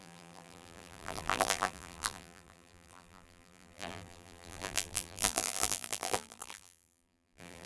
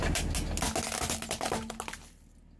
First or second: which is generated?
first